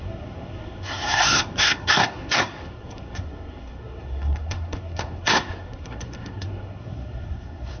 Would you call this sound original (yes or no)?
no